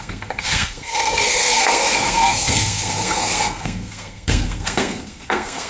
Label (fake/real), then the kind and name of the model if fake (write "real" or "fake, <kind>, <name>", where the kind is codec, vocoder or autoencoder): fake, codec, SNAC